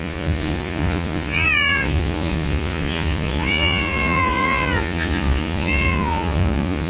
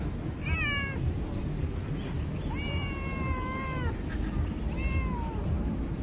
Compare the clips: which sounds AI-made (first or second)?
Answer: first